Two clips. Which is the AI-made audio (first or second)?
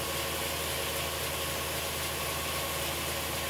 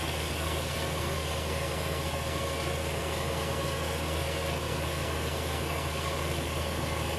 second